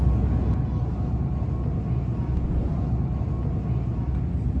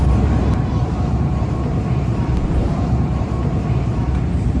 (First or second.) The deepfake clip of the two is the second